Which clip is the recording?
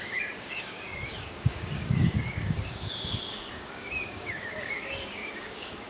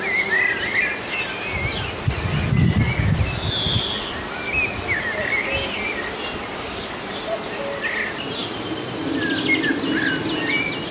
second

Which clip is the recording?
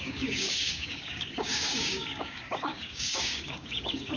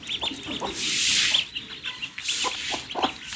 second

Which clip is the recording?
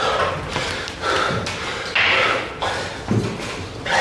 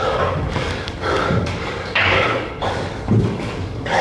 first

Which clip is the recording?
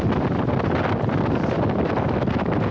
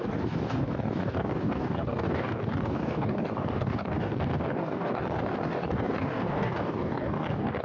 first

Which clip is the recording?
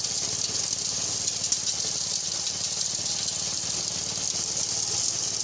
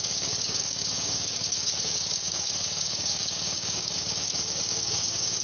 first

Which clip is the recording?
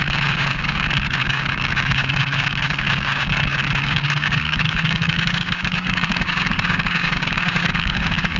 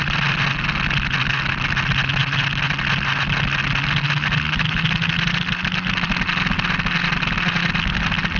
second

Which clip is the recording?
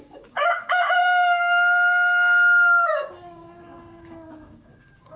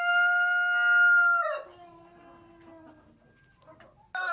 second